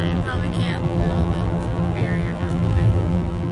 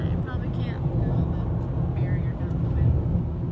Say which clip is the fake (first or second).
first